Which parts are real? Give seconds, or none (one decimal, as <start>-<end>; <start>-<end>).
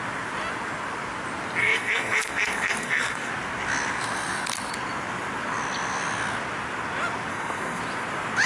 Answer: 0.0-1.6; 3.3-7.3; 7.8-8.5